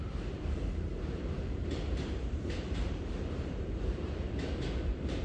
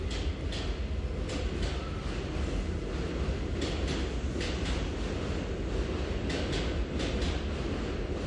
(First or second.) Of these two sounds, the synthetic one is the first